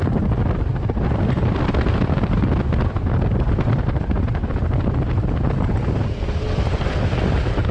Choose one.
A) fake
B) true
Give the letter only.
B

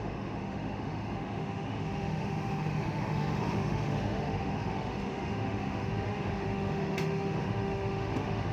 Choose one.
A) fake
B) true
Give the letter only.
A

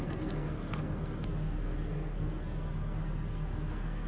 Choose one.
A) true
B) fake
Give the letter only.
B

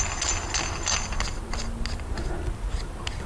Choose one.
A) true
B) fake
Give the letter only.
A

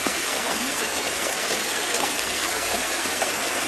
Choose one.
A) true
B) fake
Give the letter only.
B